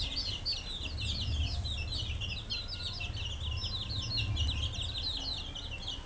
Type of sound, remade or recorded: recorded